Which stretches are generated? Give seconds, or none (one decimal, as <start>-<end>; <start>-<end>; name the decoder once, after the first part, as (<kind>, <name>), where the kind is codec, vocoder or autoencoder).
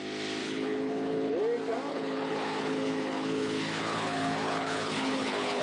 0.4-1.4 (codec, HILCodec); 1.9-5.6